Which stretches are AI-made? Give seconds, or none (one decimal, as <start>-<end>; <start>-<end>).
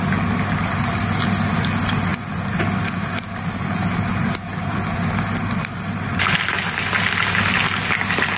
none